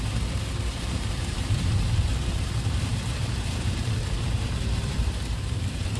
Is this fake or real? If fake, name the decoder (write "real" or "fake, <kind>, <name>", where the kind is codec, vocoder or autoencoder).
fake, vocoder, BigVGAN v2